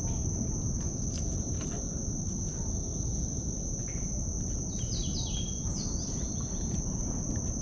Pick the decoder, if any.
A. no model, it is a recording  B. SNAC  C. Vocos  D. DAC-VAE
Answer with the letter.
A